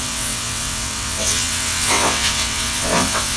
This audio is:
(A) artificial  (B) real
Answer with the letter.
A